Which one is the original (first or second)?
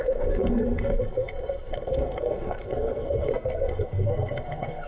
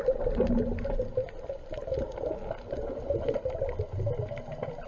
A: second